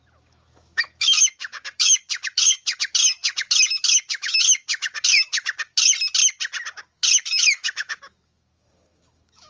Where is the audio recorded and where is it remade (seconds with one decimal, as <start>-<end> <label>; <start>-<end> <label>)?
0.0-5.9 remade; 5.9-6.7 recorded; 6.7-9.5 remade